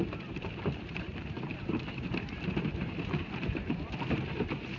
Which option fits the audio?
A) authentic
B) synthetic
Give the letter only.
B